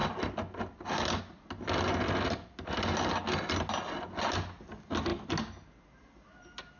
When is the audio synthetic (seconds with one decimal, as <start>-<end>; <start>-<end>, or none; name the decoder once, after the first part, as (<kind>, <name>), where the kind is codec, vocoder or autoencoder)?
none